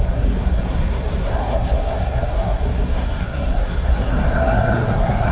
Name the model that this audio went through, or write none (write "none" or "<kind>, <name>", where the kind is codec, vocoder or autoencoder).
codec, SNAC